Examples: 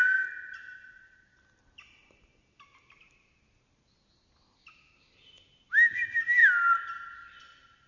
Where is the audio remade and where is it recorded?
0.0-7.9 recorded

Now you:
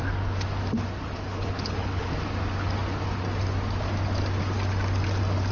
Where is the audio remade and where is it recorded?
0.0-1.1 recorded; 1.1-2.1 remade; 2.1-5.5 recorded

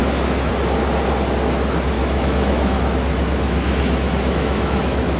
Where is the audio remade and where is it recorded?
0.0-0.5 remade; 0.5-2.0 recorded; 2.0-5.2 remade

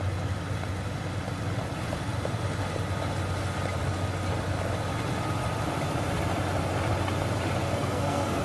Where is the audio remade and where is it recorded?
0.0-7.6 recorded; 7.6-8.4 remade

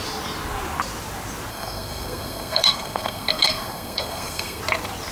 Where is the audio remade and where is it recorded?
0.0-1.5 recorded; 1.5-4.6 remade; 4.6-5.1 recorded

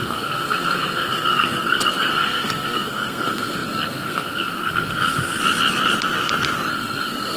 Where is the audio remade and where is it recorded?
0.0-5.4 remade; 5.4-6.7 recorded; 6.7-7.4 remade

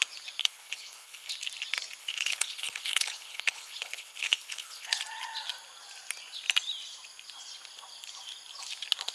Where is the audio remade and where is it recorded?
0.0-0.4 recorded; 0.4-1.3 remade; 1.3-2.0 recorded; 2.0-5.0 remade; 5.0-9.1 recorded